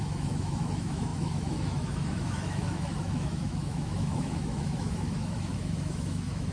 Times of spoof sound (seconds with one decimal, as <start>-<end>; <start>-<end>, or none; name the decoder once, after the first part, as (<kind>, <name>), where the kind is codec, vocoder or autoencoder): 0.0-6.5 (autoencoder, DAC-VAE)